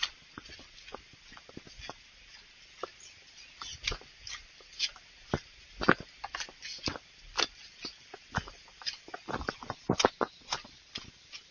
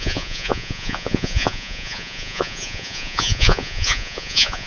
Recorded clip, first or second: first